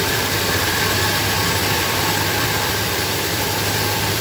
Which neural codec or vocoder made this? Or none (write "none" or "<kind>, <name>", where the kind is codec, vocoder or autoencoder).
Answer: vocoder, BigVGAN v2